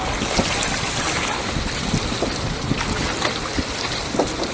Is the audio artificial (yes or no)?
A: no